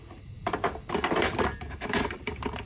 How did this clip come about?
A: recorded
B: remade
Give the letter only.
B